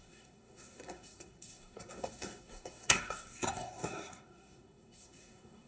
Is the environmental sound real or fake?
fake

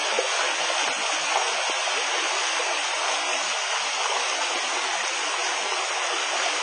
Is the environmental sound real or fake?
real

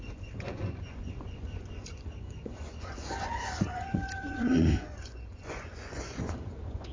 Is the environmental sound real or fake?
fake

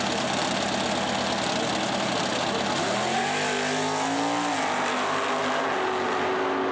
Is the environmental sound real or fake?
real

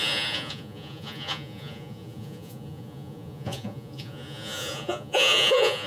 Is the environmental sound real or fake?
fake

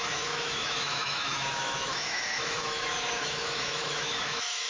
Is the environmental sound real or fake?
fake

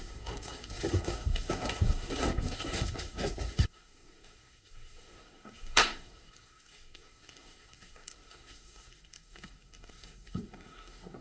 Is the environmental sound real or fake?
fake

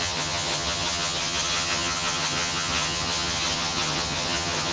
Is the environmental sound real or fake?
fake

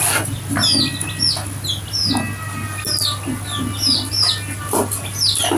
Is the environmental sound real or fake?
real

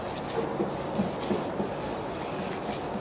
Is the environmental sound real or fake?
real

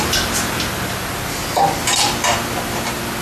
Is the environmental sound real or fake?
real